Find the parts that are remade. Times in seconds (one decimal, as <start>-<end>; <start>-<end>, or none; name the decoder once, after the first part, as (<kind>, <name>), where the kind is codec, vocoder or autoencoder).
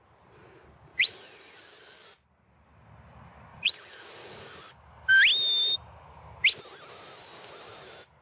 0.9-1.6 (vocoder, Vocos); 3.5-4.7